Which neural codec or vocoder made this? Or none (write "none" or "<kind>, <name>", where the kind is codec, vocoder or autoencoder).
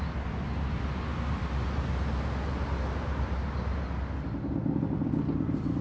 none